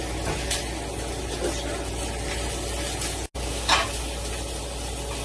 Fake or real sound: real